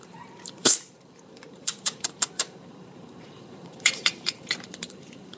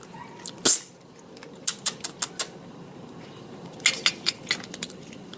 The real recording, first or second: second